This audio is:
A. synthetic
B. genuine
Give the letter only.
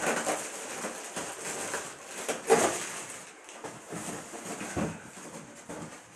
B